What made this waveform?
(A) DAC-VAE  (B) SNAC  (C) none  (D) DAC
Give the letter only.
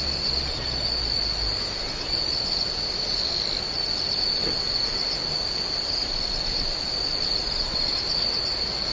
C